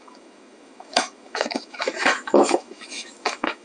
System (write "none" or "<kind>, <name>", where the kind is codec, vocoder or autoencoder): autoencoder, DAC-VAE